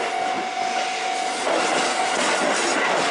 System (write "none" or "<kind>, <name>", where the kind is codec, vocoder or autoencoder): none